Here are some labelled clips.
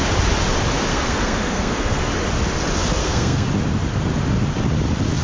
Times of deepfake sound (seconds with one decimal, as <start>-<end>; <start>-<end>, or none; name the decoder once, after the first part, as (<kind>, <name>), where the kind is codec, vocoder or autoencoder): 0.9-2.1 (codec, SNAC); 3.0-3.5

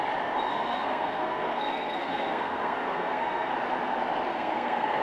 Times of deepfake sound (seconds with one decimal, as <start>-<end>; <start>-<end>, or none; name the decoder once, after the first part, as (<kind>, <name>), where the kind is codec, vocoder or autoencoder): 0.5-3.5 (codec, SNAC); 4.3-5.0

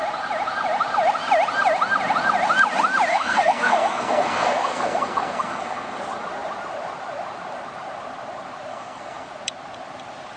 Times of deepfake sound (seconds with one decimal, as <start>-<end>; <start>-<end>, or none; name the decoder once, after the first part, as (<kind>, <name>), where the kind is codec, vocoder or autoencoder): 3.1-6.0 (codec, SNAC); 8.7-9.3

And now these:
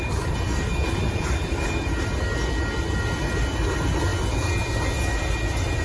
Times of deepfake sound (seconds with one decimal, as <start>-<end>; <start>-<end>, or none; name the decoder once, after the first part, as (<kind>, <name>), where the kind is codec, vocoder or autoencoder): none

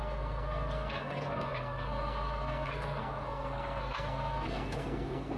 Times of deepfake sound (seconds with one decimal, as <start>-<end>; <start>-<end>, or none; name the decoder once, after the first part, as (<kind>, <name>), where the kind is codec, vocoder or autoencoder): 0.0-5.4 (codec, SNAC)